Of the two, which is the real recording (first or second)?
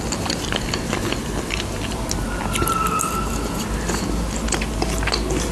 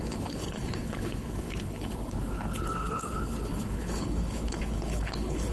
first